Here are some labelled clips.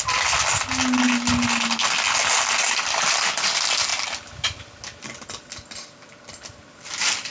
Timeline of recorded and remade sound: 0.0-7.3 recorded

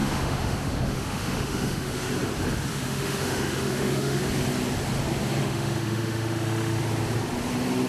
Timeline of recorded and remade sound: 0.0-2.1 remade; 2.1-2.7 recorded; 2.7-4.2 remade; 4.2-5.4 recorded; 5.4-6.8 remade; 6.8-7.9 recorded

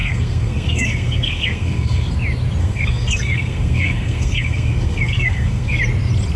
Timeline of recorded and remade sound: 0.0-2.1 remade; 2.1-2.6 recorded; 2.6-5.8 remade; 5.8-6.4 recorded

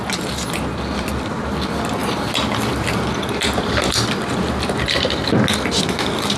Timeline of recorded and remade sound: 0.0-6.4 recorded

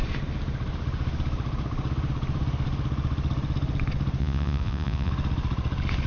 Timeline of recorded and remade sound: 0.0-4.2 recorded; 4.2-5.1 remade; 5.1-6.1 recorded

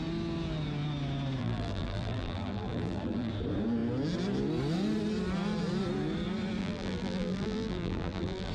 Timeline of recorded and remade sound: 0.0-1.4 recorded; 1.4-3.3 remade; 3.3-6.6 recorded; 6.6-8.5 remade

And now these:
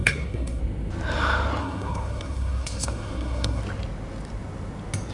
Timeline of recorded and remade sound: 0.0-0.6 remade; 0.6-1.6 recorded; 1.6-3.6 remade; 3.6-5.1 recorded

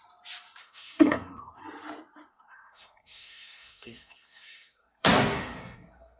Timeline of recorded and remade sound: 0.0-0.6 recorded; 0.6-1.6 remade; 1.6-2.3 recorded; 2.3-6.2 remade